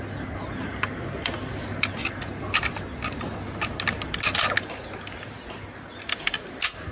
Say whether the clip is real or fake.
real